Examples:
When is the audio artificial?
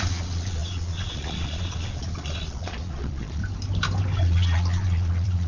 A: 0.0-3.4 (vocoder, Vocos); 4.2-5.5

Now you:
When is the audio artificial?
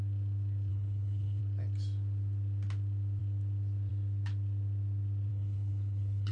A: 0.7-1.4 (codec, HILCodec); 5.3-6.3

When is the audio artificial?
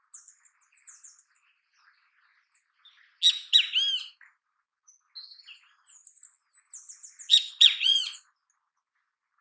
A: 7.3-8.0 (vocoder, Vocos)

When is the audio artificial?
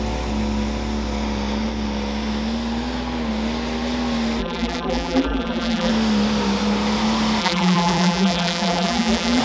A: 4.4-5.9 (vocoder, BigVGAN v2); 7.4-9.4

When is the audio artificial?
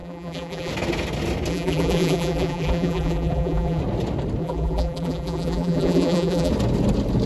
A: 0.0-0.7 (vocoder, BigVGAN v2); 1.5-3.8; 4.4-6.5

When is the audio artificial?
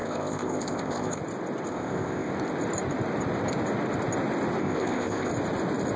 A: 0.0-1.2 (codec, ZipCodec); 1.7-2.3; 4.6-5.3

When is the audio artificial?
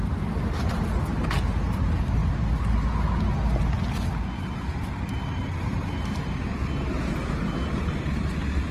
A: 5.3-6.1 (vocoder, BigVGAN v2)